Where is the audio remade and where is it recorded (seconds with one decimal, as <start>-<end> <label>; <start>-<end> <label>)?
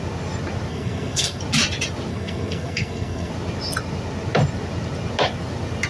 0.0-0.7 recorded; 0.7-1.4 remade; 1.4-2.1 recorded; 2.1-3.3 remade; 3.3-5.9 recorded